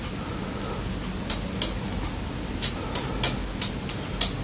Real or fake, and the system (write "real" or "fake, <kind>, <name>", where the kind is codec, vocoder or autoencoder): real